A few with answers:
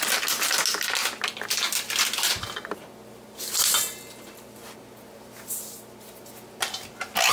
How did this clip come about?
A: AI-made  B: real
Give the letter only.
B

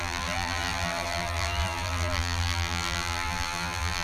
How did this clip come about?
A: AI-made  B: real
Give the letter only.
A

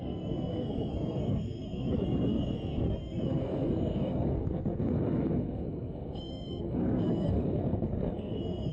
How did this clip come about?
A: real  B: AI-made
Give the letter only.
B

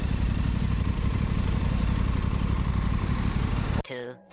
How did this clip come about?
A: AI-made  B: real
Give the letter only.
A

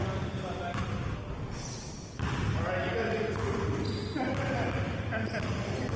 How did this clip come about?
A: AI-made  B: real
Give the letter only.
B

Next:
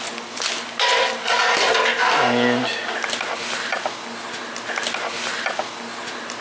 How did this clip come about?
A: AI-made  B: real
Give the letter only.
B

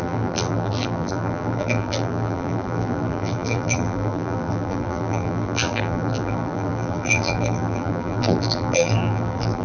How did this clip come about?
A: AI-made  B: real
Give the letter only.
A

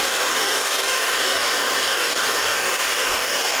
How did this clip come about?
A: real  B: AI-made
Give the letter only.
B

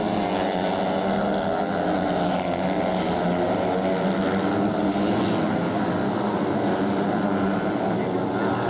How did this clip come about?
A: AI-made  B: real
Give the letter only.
B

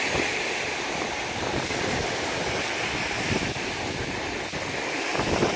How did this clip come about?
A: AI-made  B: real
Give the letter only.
B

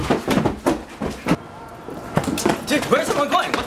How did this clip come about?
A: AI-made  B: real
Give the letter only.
B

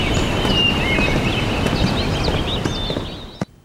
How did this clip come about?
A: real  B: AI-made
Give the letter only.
A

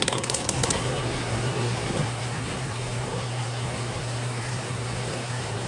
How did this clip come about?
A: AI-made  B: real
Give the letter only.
A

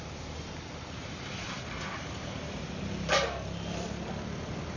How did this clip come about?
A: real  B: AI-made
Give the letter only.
A